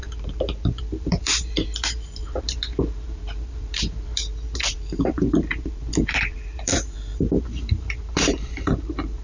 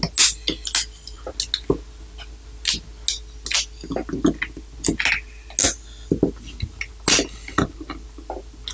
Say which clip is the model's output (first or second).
first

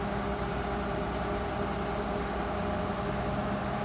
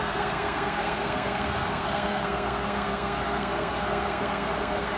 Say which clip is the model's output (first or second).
second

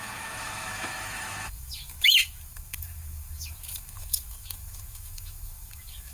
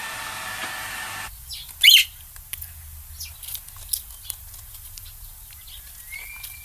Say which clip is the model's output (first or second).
first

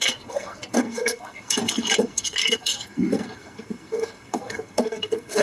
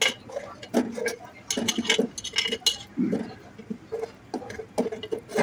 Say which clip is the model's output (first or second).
first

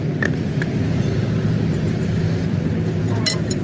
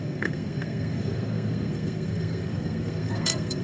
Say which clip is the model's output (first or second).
second